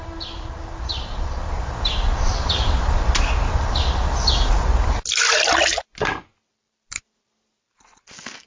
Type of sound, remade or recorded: recorded